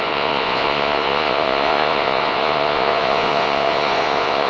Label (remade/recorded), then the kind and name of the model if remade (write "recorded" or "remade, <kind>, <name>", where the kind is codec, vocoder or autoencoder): remade, vocoder, Vocos